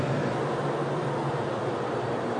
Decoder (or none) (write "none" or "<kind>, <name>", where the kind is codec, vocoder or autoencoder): vocoder, BigVGAN v2